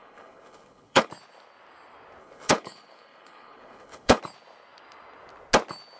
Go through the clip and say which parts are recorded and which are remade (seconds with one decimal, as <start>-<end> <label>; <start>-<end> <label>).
0.0-1.1 remade; 1.1-2.2 recorded; 2.2-4.2 remade; 4.2-6.0 recorded